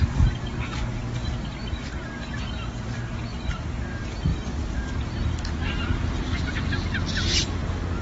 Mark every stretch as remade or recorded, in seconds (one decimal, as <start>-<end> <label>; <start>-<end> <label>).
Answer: 0.0-4.3 recorded; 4.3-5.7 remade; 5.7-8.0 recorded